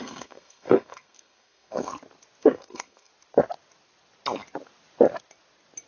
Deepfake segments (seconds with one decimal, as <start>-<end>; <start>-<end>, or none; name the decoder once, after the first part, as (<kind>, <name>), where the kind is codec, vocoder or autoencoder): 0.0-1.9 (codec, SNAC); 2.4-3.1